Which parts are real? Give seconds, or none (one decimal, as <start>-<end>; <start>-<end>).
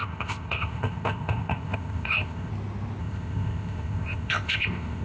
2.5-3.0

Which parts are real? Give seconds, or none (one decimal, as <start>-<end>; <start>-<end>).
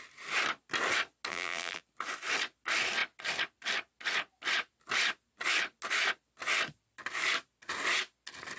0.0-1.3; 1.8-8.6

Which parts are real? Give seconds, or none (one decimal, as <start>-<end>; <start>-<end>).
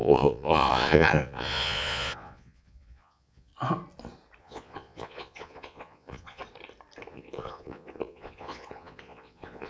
3.5-4.4; 6.4-7.1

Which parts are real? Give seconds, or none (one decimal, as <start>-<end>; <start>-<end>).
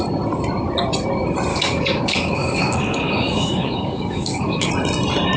0.0-1.5; 4.7-5.4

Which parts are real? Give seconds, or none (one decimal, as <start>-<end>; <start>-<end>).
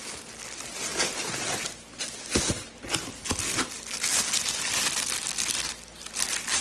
0.0-6.6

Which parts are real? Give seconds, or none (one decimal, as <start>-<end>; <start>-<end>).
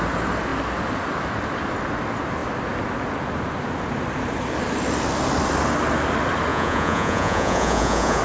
0.0-6.5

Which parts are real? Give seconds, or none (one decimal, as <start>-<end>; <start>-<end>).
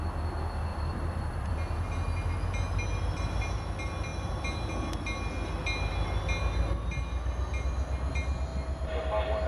0.0-0.7; 1.5-9.5